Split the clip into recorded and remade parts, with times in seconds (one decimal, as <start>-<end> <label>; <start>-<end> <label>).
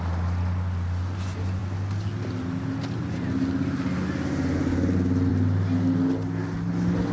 0.0-7.1 recorded